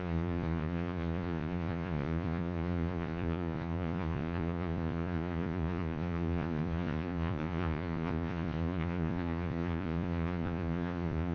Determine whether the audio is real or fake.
fake